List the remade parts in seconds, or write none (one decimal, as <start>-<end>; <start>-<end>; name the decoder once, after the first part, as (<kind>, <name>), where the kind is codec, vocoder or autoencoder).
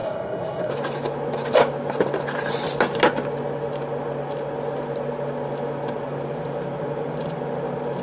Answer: 0.0-0.7 (codec, SNAC)